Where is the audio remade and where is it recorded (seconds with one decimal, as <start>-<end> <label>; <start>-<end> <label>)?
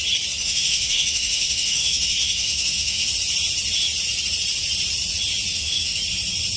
0.0-0.4 recorded; 0.4-3.1 remade; 3.1-5.5 recorded; 5.5-6.0 remade; 6.0-6.6 recorded